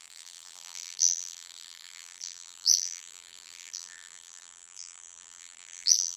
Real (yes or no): no